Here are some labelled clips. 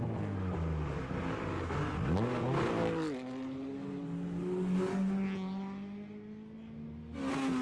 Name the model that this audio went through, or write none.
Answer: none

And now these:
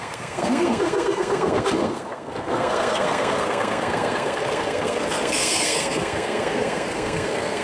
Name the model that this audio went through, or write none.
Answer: codec, SNAC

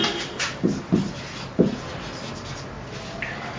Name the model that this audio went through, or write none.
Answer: vocoder, BigVGAN v2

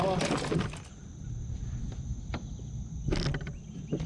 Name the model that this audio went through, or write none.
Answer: none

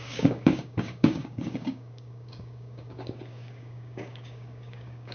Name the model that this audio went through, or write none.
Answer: codec, DAC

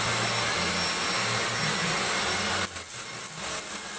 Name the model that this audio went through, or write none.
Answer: none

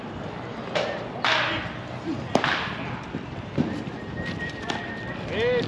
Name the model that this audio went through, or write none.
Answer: none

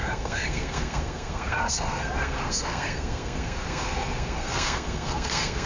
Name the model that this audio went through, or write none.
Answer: codec, SNAC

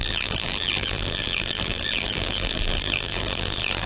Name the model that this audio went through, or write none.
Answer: vocoder, BigVGAN v2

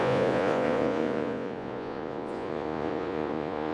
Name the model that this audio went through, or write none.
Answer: vocoder, Vocos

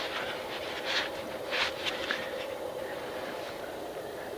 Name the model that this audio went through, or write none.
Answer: vocoder, BigVGAN v2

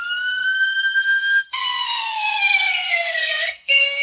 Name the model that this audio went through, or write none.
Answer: codec, SNAC